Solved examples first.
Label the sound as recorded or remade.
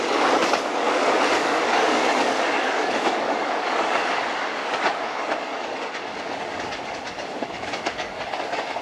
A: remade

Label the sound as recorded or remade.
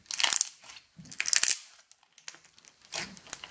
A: recorded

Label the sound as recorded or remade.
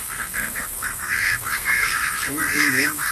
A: remade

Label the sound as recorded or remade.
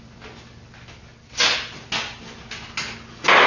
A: recorded